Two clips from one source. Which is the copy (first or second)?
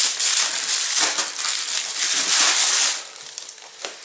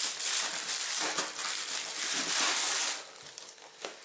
first